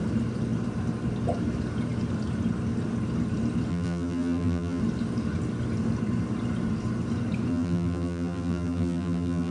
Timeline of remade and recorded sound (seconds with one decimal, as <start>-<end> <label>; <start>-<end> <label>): 0.0-3.7 recorded; 3.7-4.8 remade; 4.8-7.5 recorded; 7.5-9.5 remade